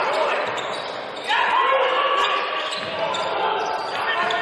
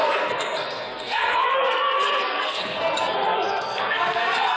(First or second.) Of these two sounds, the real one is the first